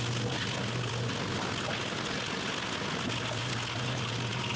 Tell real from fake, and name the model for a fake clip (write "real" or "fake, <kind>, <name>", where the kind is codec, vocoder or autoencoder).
real